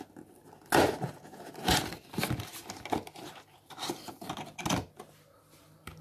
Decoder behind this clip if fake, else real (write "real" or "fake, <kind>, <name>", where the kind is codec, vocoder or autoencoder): real